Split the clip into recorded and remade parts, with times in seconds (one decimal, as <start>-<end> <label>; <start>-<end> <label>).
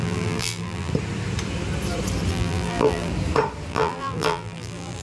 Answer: 0.0-0.9 remade; 0.9-2.3 recorded; 2.3-3.1 remade; 3.1-3.7 recorded; 3.7-5.0 remade